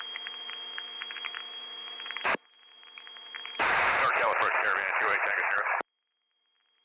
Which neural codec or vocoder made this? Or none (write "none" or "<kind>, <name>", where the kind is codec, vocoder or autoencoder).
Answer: vocoder, BigVGAN v2